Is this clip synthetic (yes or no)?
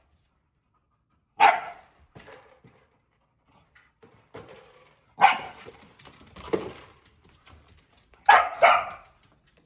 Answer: yes